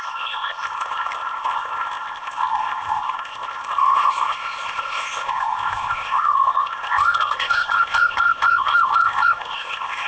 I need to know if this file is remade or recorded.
remade